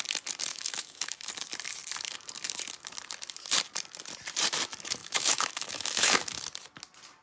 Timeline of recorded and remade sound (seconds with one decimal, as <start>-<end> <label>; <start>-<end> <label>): 0.0-0.5 recorded; 0.5-1.3 remade; 1.3-5.0 recorded; 5.0-6.4 remade; 6.4-7.2 recorded

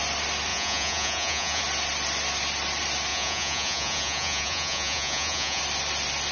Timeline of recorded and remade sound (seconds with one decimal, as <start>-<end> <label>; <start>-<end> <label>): 0.0-0.5 recorded; 0.5-1.6 remade; 1.6-3.1 recorded; 3.1-5.6 remade; 5.6-6.3 recorded

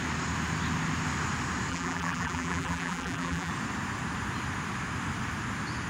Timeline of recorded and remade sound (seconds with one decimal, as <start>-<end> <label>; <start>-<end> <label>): 0.0-1.7 recorded; 1.7-3.5 remade; 3.5-5.9 recorded

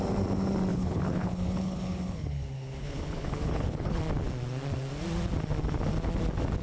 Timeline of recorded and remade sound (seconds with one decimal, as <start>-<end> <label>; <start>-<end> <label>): 0.0-0.7 recorded; 0.7-4.0 remade; 4.0-6.6 recorded

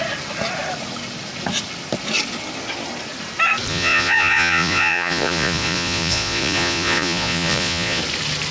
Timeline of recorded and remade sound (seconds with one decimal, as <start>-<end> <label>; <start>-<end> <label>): 0.0-3.7 recorded; 3.7-8.0 remade; 8.0-8.5 recorded

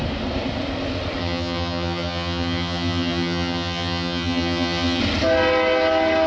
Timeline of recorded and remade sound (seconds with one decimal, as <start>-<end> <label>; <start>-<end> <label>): 0.0-1.2 recorded; 1.2-5.0 remade; 5.0-6.3 recorded